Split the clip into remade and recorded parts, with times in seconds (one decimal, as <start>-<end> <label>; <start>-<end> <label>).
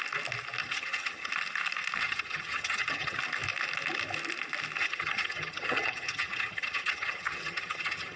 0.0-0.6 recorded; 0.6-1.3 remade; 1.3-2.0 recorded; 2.0-3.2 remade; 3.2-4.8 recorded; 4.8-8.2 remade